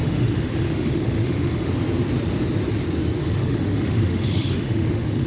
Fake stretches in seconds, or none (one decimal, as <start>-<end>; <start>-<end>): 0.0-1.7; 3.2-5.3